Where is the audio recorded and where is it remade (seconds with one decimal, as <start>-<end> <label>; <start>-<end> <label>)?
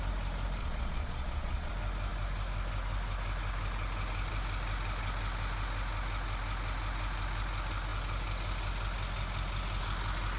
0.0-0.6 recorded; 0.6-1.7 remade; 1.7-10.4 recorded